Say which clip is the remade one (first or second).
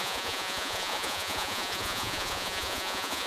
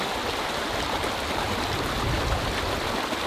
first